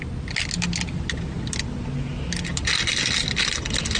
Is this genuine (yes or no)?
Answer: yes